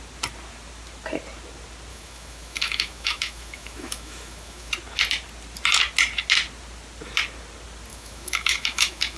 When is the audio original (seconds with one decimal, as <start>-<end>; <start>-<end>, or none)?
0.0-1.9; 4.7-7.9